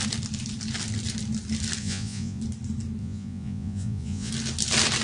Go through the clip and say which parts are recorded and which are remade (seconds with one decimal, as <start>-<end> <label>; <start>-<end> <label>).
0.0-1.8 recorded; 1.8-2.4 remade; 2.4-3.0 recorded; 3.0-4.3 remade; 4.3-5.0 recorded